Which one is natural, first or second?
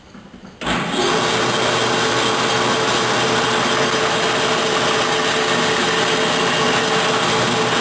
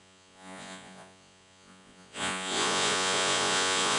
first